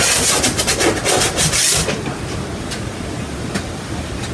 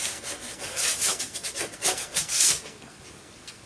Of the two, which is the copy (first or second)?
second